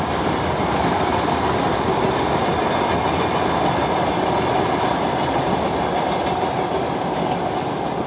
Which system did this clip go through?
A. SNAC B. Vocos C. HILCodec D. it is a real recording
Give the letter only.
D